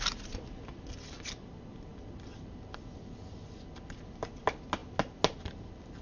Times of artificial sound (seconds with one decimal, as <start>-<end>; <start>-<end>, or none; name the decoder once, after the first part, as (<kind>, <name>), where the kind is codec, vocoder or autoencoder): none